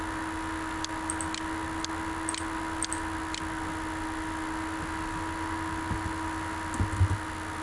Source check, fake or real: real